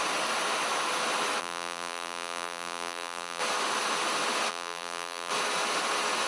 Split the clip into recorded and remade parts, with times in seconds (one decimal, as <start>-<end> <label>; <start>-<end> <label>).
0.0-1.4 recorded; 1.4-3.4 remade; 3.4-4.5 recorded; 4.5-5.3 remade; 5.3-6.3 recorded